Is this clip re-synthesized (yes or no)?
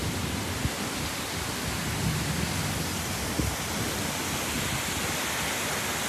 no